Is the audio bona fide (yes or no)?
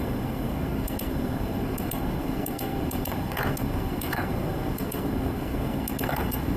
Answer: no